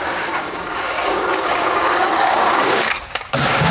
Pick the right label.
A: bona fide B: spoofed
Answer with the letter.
B